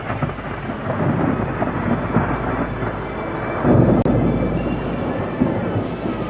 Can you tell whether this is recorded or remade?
recorded